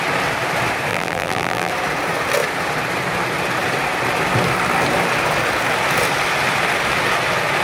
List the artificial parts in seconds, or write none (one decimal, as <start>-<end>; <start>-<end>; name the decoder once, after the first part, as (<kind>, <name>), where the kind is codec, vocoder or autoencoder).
0.9-1.7 (vocoder, BigVGAN v2)